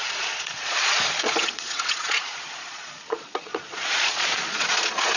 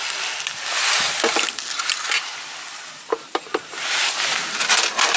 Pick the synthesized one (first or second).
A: first